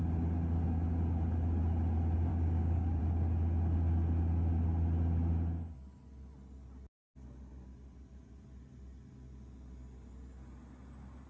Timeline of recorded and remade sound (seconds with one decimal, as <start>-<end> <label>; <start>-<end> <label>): 0.0-2.3 recorded; 2.3-3.0 remade; 3.0-11.3 recorded